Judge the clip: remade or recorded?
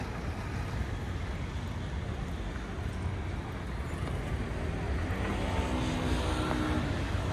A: recorded